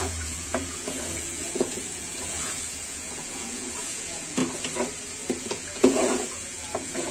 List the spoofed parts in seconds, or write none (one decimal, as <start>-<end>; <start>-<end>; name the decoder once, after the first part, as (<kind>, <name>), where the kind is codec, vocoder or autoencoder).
0.0-4.4 (vocoder, Vocos); 5.4-7.1